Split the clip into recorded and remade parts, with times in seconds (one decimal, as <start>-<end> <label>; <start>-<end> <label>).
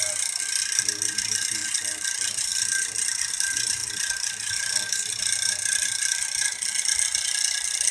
0.0-1.6 remade; 1.6-2.1 recorded; 2.1-3.8 remade; 3.8-4.6 recorded; 4.6-6.5 remade; 6.5-7.9 recorded